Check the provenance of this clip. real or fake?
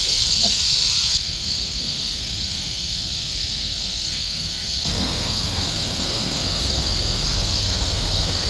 fake